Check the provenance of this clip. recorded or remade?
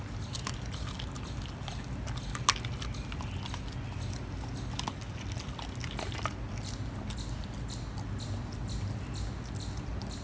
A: recorded